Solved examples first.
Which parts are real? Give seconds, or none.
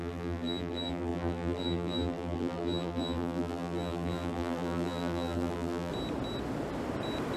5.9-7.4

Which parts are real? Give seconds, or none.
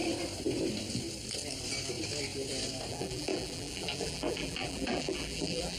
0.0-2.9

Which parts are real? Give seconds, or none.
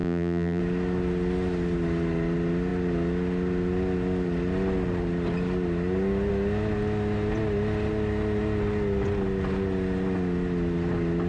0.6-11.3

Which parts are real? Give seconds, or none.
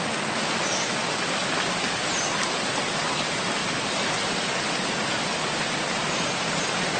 0.0-7.0